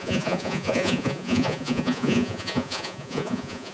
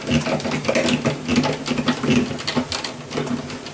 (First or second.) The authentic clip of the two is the second